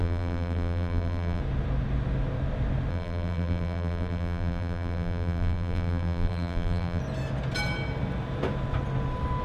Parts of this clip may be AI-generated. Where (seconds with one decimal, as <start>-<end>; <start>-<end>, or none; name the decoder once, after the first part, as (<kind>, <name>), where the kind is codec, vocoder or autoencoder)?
0.0-1.4 (vocoder, BigVGAN v2); 2.9-7.0